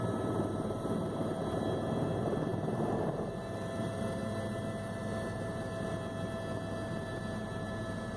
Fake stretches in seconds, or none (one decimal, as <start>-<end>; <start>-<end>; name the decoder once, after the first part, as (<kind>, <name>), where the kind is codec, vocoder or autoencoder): none